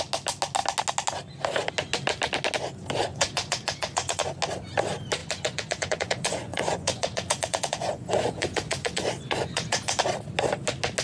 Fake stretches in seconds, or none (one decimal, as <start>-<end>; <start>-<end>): 3.1-4.4; 5.2-10.0